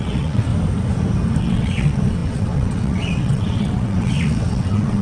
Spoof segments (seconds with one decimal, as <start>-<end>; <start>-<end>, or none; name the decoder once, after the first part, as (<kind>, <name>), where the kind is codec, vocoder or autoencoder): 0.0-0.5 (vocoder, WaveNeXt); 1.4-5.0